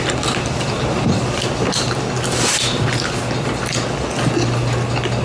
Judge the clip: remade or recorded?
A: recorded